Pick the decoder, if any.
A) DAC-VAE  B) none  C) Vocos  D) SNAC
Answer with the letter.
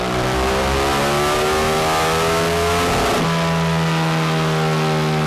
B